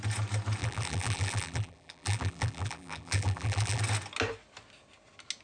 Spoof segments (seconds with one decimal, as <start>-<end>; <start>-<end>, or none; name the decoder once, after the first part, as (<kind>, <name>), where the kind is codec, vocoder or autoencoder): 0.6-3.8 (vocoder, BigVGAN v2)